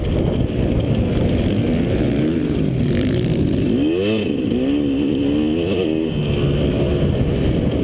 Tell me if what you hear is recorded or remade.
recorded